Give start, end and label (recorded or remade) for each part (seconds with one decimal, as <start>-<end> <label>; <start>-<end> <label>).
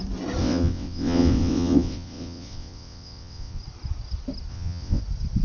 0.0-0.4 recorded; 0.4-3.6 remade; 3.6-4.5 recorded; 4.5-5.0 remade; 5.0-5.4 recorded